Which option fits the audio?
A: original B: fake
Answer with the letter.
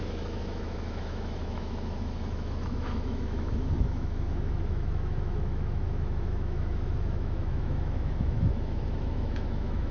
B